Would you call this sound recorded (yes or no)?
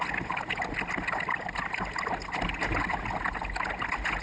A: yes